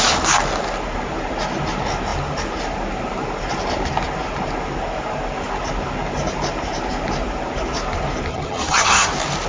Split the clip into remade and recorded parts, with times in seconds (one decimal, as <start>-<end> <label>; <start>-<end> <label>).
0.0-8.3 recorded; 8.3-9.1 remade; 9.1-9.5 recorded